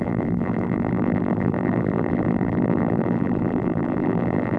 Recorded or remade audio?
remade